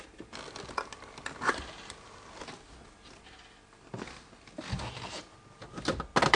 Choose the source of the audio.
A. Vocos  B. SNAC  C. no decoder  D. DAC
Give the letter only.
C